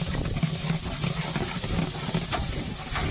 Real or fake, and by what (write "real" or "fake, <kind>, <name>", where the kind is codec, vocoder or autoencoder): real